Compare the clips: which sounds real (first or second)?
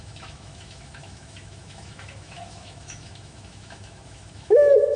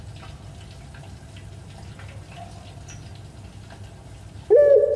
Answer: second